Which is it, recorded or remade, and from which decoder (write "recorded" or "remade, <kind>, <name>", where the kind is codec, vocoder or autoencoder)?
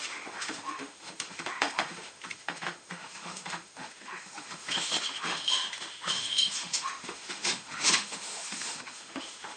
remade, autoencoder, DAC-VAE